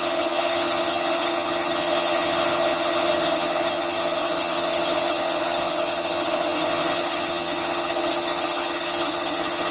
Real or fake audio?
fake